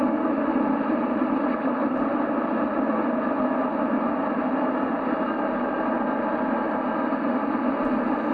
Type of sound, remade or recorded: recorded